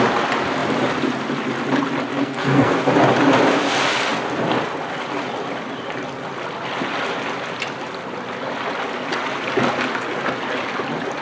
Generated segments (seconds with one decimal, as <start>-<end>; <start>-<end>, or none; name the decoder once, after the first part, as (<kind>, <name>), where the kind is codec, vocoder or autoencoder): 2.1-2.9 (codec, SNAC)